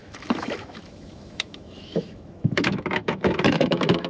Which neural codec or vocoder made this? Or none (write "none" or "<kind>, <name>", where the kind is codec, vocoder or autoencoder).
autoencoder, DAC-VAE